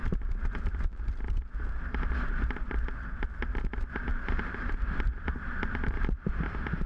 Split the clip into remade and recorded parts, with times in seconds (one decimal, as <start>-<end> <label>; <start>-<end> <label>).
0.0-1.0 remade; 1.0-4.1 recorded; 4.1-6.3 remade; 6.3-6.9 recorded